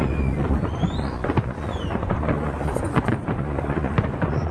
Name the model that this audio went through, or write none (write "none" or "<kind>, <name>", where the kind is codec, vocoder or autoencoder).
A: vocoder, Vocos